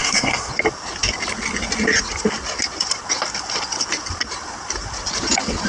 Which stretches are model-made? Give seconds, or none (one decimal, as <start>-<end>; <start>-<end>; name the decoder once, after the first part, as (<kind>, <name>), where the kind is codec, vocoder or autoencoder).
0.0-0.5 (codec, SNAC)